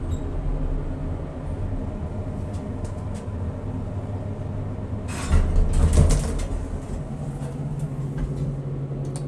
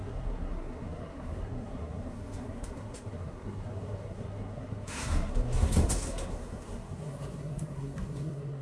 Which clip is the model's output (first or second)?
second